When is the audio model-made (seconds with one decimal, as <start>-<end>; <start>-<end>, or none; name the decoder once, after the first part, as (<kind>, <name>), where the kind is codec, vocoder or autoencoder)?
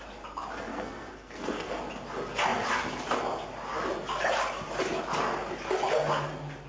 0.7-1.8 (codec, SNAC)